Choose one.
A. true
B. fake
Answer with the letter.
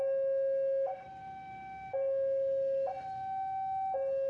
A